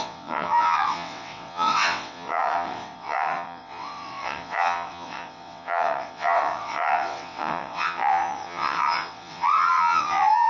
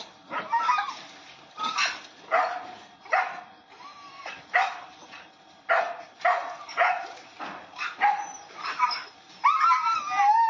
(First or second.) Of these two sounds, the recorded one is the second